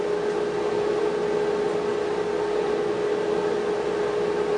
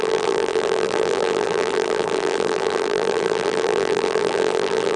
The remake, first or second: second